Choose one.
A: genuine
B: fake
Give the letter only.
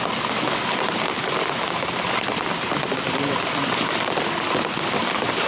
A